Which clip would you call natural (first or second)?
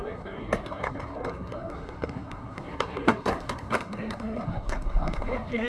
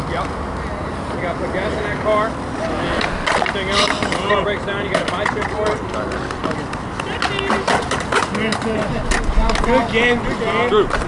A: second